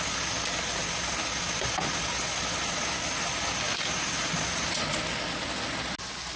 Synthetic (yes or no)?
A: no